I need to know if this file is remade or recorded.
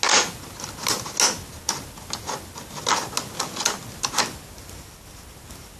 recorded